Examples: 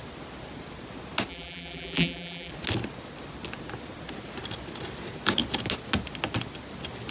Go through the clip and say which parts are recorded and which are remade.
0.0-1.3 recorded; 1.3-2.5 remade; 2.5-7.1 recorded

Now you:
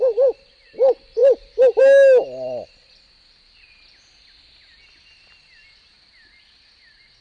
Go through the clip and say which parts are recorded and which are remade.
0.0-7.2 recorded

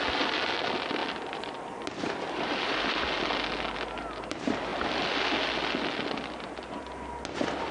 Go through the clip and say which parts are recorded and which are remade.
0.0-1.0 recorded; 1.0-3.1 remade; 3.1-7.7 recorded

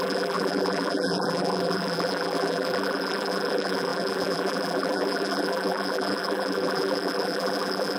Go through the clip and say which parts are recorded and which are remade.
0.0-8.0 remade